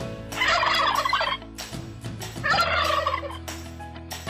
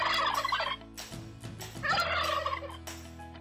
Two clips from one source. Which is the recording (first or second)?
second